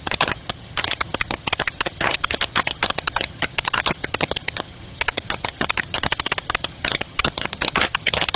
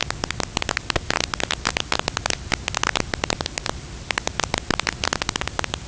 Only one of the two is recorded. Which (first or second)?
second